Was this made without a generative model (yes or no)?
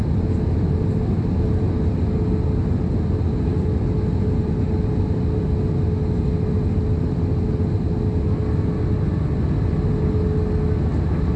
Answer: yes